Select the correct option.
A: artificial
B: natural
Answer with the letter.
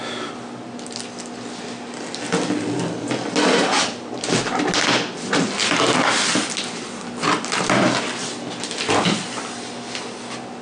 B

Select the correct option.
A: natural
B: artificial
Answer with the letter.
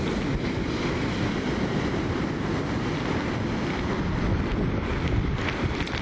A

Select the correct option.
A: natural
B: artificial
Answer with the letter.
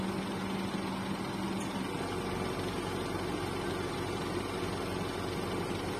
A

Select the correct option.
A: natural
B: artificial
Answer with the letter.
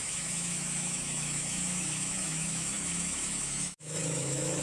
B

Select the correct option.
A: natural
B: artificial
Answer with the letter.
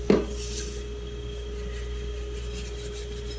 A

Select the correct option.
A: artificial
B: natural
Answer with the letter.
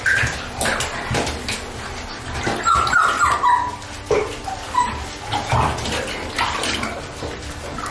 B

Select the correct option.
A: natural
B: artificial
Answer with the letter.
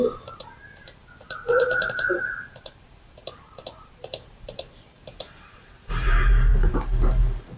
B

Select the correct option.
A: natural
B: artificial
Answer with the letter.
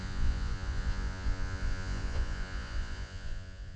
B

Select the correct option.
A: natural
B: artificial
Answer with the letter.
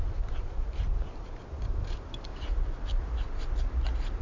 A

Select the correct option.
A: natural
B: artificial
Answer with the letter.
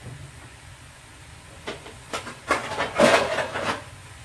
B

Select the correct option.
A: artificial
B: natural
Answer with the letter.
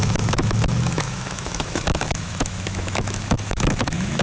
A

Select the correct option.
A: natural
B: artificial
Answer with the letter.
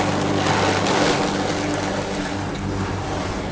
A